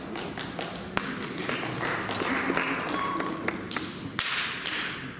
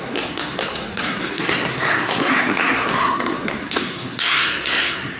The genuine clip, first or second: first